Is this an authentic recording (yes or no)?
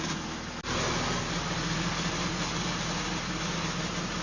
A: no